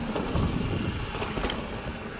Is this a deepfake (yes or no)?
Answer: no